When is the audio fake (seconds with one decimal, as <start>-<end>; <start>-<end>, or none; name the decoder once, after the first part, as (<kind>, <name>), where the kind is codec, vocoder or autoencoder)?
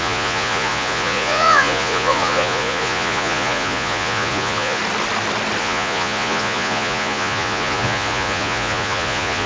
0.0-4.8 (vocoder, Vocos); 5.6-9.5